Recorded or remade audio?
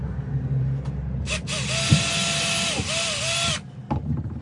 recorded